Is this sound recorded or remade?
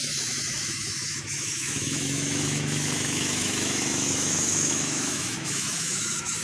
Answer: remade